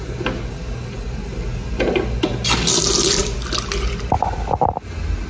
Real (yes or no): yes